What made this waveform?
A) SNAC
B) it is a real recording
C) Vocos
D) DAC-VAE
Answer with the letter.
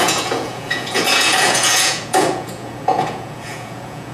C